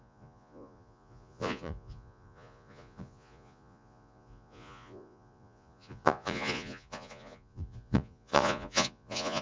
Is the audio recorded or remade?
remade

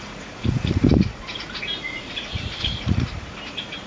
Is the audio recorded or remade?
remade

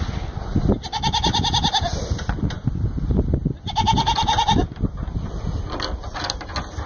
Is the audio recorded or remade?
recorded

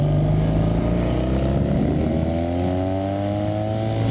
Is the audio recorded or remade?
recorded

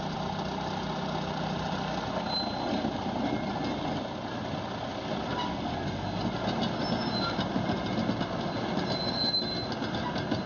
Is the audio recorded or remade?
recorded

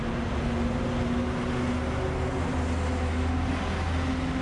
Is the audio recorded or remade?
recorded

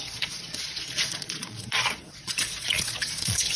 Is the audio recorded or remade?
remade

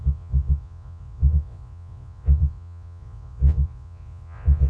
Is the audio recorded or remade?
remade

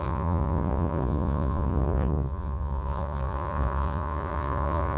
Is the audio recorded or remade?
remade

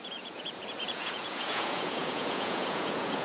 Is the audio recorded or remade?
remade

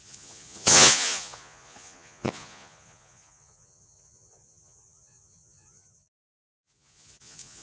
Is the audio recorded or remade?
remade